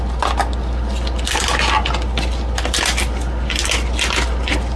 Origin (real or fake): real